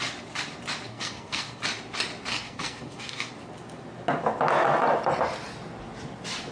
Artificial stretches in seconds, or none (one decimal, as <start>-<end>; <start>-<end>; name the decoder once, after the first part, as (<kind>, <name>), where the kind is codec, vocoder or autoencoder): 0.9-1.6 (codec, SNAC); 2.3-3.3